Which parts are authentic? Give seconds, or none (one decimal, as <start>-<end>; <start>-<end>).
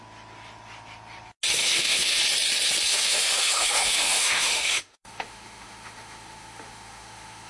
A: 0.0-1.6; 2.2-2.9